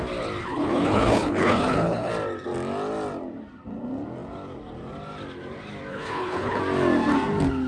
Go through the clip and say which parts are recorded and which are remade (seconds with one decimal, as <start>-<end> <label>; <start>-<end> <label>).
0.0-0.4 recorded; 0.4-2.1 remade; 2.1-5.9 recorded; 5.9-6.6 remade; 6.6-7.7 recorded